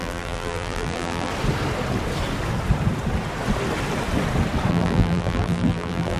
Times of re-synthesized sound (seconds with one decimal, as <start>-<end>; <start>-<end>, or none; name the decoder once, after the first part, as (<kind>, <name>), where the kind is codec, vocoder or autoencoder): 0.0-1.3 (vocoder, BigVGAN v2); 4.7-6.2